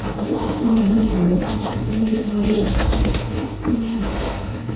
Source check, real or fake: fake